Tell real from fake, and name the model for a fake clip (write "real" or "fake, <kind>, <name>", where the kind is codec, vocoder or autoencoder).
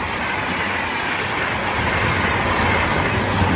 real